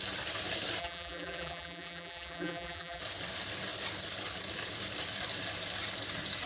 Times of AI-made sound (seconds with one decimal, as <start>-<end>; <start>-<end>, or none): 0.8-3.0